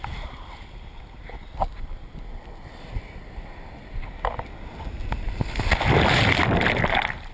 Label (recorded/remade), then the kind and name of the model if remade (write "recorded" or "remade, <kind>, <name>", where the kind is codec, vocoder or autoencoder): recorded